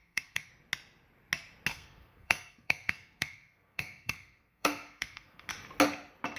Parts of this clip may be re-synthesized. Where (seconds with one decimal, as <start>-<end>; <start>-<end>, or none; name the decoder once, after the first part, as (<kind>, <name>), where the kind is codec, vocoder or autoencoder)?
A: 0.0-0.5 (codec, SNAC); 1.7-5.5